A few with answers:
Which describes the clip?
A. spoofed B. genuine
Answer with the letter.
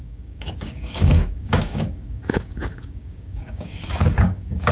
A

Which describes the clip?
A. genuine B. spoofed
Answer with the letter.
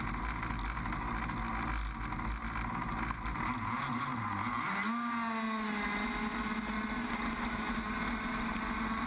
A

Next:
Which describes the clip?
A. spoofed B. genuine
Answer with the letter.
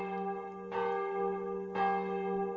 B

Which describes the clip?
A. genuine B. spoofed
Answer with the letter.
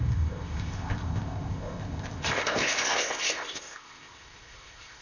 B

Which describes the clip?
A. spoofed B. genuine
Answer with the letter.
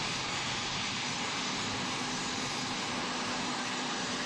B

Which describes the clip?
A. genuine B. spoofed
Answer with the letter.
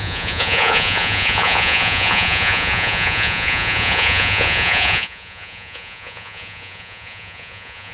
B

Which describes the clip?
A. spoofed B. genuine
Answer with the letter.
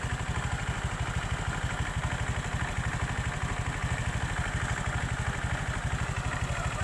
B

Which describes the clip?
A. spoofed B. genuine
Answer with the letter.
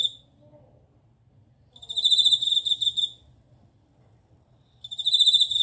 B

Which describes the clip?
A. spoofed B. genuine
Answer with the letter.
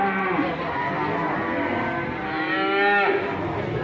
B